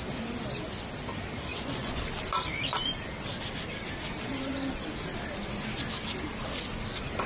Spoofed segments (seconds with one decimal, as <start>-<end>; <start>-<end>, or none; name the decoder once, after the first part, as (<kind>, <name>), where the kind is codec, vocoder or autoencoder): 1.5-2.0 (vocoder, Vocos)